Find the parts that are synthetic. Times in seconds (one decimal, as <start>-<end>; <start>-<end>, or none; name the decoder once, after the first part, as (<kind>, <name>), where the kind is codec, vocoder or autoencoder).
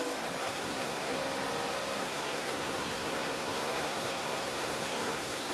0.4-1.2 (codec, SNAC); 2.0-5.5